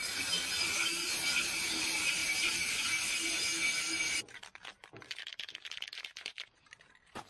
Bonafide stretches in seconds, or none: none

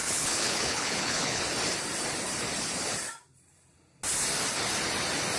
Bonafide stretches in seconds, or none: 1.4-5.4